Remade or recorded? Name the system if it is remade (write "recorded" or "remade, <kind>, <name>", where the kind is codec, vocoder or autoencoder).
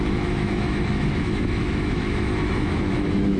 remade, autoencoder, DAC-VAE